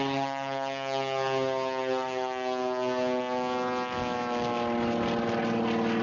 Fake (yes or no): no